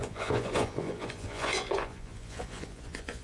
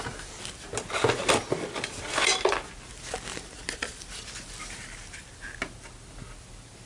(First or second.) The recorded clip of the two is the second